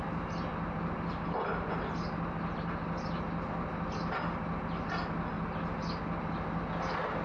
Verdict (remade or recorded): recorded